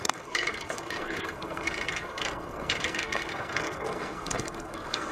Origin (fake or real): fake